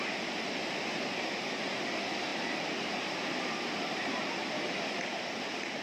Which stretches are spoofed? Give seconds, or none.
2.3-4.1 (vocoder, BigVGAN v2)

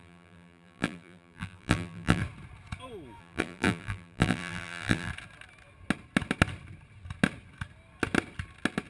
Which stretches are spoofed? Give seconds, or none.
0.0-2.2 (vocoder, BigVGAN v2); 3.2-5.1

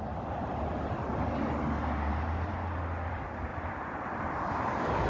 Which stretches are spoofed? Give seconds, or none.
0.0-1.1 (vocoder, BigVGAN v2); 3.1-5.1

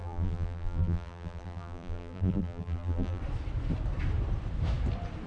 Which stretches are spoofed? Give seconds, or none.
0.0-3.2 (vocoder, BigVGAN v2)

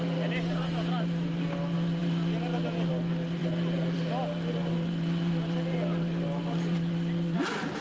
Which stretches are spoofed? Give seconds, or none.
3.4-7.8 (vocoder, BigVGAN v2)